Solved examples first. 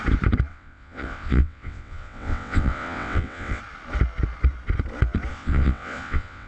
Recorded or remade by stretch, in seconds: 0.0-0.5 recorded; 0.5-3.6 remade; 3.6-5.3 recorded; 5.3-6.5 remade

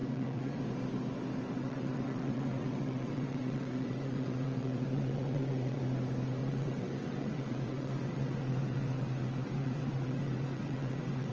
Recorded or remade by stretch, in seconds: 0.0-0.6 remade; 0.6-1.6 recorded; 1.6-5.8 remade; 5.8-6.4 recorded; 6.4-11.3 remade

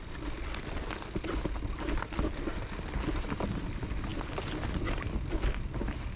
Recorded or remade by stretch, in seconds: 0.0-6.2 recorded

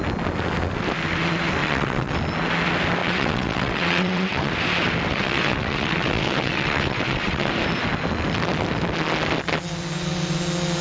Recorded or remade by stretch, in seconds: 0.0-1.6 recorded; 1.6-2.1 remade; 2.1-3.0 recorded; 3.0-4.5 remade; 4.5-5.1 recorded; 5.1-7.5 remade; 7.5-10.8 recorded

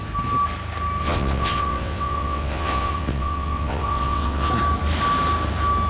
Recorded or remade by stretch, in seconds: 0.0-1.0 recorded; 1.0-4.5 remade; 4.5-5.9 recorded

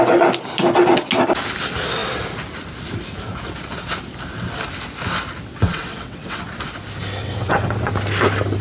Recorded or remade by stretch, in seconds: 0.0-5.5 recorded; 5.5-6.4 remade; 6.4-7.2 recorded; 7.2-7.9 remade; 7.9-8.6 recorded

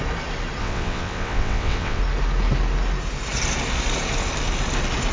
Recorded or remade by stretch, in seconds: 0.0-0.6 recorded; 0.6-2.0 remade; 2.0-5.1 recorded

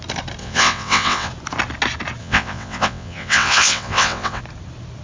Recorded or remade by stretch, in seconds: 0.0-0.4 recorded; 0.4-1.3 remade; 1.3-2.2 recorded; 2.2-4.4 remade; 4.4-5.0 recorded